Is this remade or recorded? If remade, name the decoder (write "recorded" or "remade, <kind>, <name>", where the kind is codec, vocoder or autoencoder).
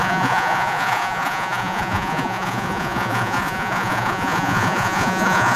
remade, vocoder, Vocos